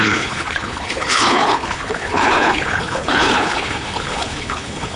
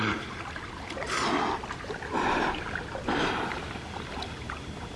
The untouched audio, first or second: second